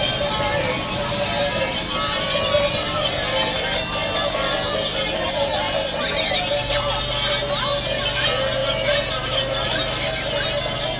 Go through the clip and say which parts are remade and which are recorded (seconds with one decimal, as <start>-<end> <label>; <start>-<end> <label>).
0.0-11.0 recorded